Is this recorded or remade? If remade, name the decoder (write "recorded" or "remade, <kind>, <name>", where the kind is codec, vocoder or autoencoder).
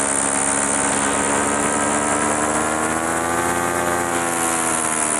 recorded